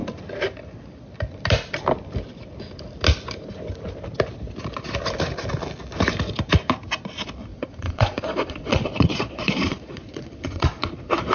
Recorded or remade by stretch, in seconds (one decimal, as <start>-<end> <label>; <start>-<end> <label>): 0.0-7.5 recorded; 7.5-11.3 remade